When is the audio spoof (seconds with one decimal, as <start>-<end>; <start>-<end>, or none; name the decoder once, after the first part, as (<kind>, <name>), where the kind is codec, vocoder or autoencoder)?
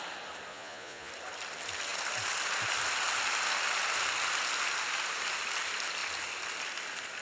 0.5-1.1 (vocoder, Vocos)